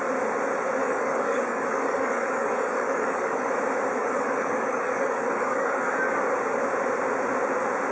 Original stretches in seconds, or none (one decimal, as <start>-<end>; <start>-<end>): 0.0-0.8; 3.5-4.0; 6.1-7.9